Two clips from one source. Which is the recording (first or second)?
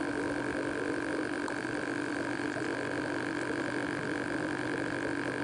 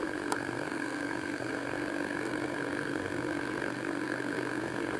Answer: first